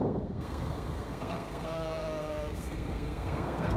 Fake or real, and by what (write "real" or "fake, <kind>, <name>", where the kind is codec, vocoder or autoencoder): fake, codec, SNAC